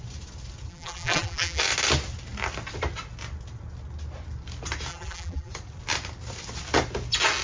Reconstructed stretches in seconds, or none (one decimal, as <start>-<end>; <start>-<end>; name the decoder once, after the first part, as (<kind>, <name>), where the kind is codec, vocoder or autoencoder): 0.7-1.6 (vocoder, BigVGAN v2); 4.9-5.5